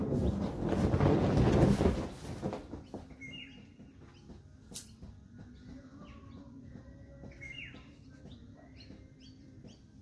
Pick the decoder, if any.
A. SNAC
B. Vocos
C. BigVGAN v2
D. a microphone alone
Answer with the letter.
D